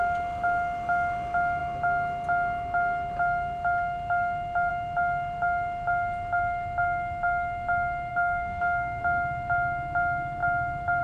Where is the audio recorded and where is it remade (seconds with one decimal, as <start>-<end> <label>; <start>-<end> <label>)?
0.0-8.1 recorded; 8.1-9.0 remade; 9.0-11.0 recorded